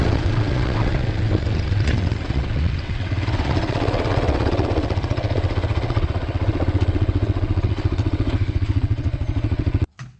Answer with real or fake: fake